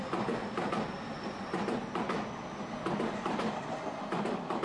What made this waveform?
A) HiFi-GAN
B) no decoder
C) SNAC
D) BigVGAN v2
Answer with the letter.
B